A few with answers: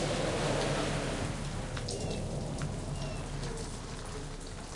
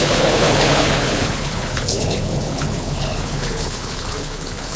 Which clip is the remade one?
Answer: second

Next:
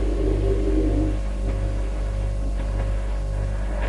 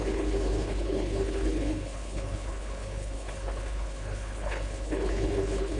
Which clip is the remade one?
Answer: second